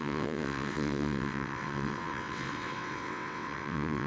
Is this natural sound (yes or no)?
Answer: no